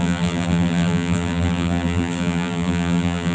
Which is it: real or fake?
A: fake